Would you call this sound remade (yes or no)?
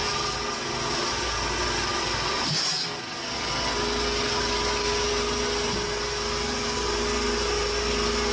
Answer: no